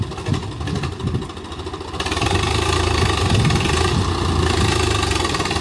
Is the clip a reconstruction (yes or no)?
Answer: no